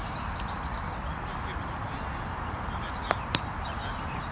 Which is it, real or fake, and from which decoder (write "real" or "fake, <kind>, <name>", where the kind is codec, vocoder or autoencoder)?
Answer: real